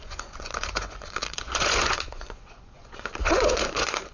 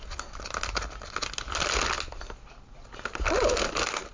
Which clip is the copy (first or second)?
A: first